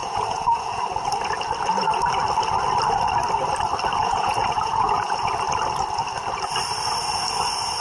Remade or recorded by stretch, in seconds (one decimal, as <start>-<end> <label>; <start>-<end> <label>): 0.0-0.8 remade; 0.8-4.0 recorded; 4.0-5.3 remade; 5.3-7.8 recorded